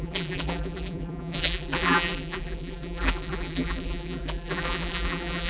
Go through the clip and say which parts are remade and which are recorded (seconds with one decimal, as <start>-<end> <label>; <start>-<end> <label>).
0.0-5.5 remade